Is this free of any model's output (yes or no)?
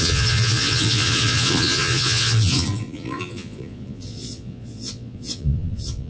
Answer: no